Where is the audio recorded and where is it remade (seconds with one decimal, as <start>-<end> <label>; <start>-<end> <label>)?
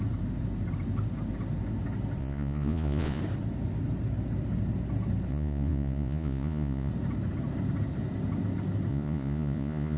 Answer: 0.0-2.2 recorded; 2.2-3.2 remade; 3.2-5.3 recorded; 5.3-6.9 remade; 6.9-8.9 recorded; 8.9-10.0 remade